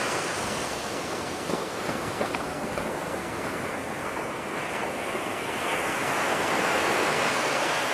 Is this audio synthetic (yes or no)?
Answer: yes